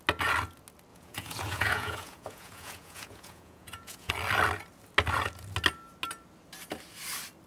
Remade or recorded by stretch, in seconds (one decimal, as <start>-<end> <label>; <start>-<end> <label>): 0.0-0.9 recorded; 0.9-4.1 remade; 4.1-7.5 recorded